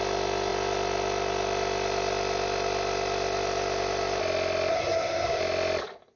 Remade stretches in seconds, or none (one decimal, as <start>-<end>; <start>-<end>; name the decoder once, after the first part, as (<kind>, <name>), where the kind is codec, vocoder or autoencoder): 4.7-5.4 (codec, SNAC)